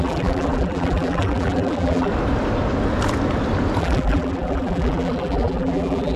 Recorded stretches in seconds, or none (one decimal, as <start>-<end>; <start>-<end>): 2.1-3.8